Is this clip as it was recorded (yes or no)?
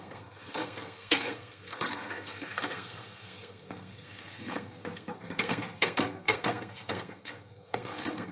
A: no